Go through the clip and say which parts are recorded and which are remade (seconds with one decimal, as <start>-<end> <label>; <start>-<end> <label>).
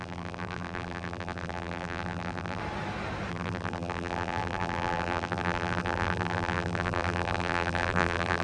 0.0-2.6 remade; 2.6-3.3 recorded; 3.3-8.4 remade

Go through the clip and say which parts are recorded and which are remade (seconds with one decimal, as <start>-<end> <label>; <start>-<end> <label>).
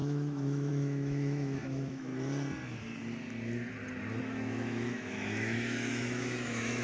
0.0-2.1 remade; 2.1-4.2 recorded; 4.2-6.8 remade